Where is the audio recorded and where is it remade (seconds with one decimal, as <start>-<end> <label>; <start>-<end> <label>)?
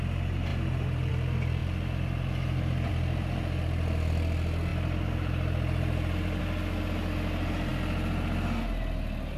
0.0-9.4 recorded